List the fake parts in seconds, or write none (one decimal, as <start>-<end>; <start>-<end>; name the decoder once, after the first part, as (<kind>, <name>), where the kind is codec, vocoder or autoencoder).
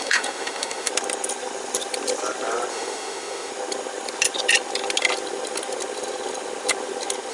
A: 0.0-0.9 (autoencoder, DAC-VAE); 2.7-3.5